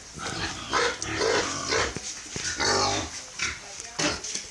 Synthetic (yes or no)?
no